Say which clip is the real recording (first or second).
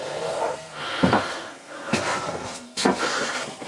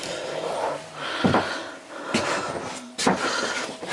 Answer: second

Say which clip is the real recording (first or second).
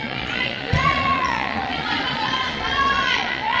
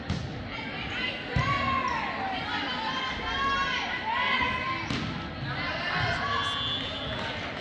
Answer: second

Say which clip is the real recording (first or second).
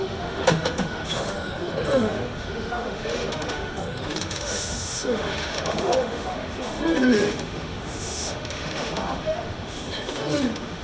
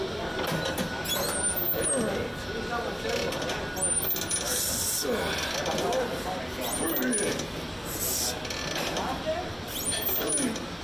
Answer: second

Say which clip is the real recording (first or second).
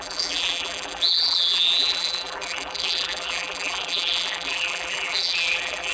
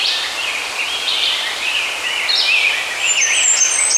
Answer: second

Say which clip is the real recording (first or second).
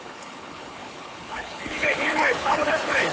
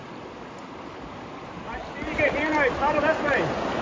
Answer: second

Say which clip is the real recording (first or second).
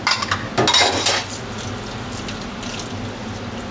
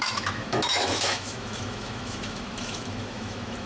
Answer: first